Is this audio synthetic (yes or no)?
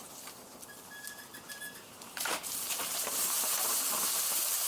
yes